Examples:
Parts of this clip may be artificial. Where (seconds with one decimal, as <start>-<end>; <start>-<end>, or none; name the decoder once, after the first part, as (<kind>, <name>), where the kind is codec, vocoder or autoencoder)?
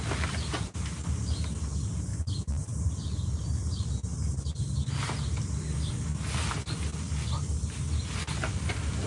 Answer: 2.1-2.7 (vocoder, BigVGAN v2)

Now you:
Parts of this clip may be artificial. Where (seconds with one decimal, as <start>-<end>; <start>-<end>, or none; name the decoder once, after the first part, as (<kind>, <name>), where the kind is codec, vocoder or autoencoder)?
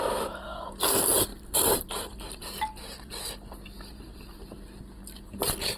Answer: 1.3-1.9 (vocoder, BigVGAN v2)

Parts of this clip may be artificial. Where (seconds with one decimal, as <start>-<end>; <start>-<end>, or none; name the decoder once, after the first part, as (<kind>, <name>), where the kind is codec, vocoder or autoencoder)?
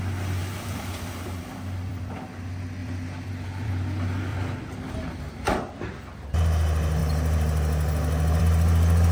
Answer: 0.4-2.3 (vocoder, BigVGAN v2); 2.8-3.7; 4.3-5.2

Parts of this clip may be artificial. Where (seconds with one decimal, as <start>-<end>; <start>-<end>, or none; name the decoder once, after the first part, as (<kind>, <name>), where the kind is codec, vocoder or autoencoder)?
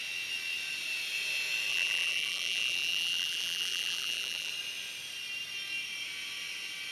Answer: 1.7-4.5 (vocoder, BigVGAN v2)